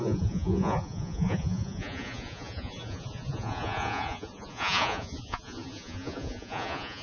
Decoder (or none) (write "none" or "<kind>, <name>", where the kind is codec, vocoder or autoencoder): vocoder, Vocos